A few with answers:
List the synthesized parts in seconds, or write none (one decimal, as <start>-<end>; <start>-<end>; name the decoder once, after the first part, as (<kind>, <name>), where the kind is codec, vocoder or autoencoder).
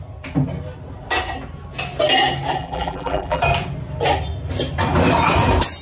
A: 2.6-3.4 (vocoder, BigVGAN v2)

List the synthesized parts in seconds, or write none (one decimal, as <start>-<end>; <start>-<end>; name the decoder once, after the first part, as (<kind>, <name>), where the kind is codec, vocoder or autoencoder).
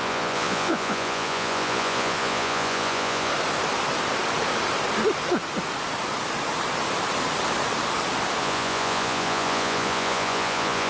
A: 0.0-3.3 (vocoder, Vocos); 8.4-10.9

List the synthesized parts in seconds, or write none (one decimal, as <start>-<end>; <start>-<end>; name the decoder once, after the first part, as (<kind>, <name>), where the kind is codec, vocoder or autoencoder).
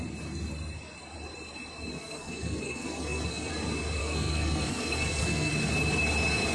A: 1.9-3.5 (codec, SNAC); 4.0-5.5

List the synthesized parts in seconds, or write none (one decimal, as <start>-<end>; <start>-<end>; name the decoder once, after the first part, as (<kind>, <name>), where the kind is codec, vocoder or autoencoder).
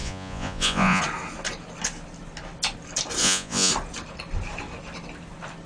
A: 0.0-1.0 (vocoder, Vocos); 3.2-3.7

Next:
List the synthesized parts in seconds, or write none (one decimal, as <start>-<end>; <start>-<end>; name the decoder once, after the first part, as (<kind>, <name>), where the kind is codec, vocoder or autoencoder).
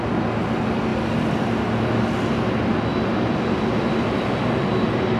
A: none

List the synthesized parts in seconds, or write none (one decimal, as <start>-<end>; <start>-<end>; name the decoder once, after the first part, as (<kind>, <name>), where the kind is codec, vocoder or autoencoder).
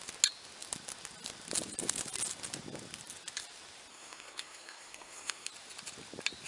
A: 3.9-5.5 (codec, SNAC)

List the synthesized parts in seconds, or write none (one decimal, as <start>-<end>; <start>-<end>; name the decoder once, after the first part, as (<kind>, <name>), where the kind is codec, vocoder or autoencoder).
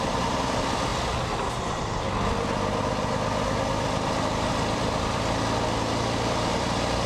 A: 0.0-0.9 (vocoder, BigVGAN v2); 4.5-7.1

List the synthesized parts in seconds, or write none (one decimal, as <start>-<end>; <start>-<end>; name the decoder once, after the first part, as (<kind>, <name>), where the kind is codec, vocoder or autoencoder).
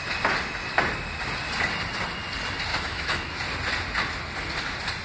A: 2.7-3.3 (autoencoder, DAC-VAE)